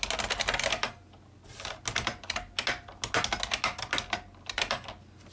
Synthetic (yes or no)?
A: no